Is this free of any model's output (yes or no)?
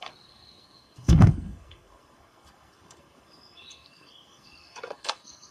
no